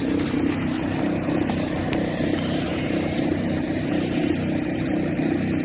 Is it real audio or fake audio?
fake